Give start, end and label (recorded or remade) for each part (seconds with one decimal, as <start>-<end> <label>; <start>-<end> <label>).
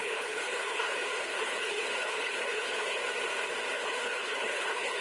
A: 0.0-3.0 remade; 3.0-3.7 recorded; 3.7-5.0 remade